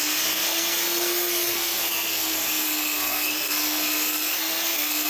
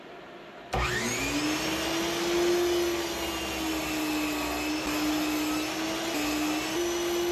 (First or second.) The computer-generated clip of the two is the first